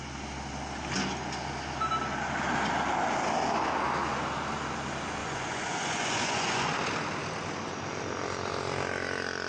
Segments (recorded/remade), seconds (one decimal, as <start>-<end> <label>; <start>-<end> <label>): 0.0-5.2 recorded; 5.2-6.7 remade; 6.7-9.5 recorded